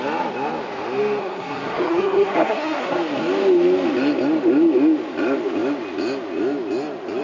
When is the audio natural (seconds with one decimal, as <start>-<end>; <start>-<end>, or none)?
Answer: 0.0-1.2; 2.9-7.2